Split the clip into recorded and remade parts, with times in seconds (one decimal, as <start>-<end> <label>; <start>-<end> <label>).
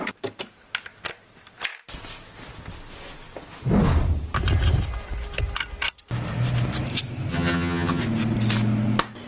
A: 0.0-7.3 recorded; 7.3-8.0 remade; 8.0-9.3 recorded